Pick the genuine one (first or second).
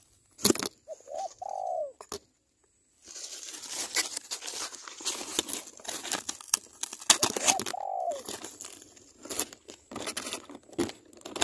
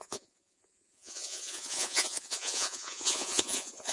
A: first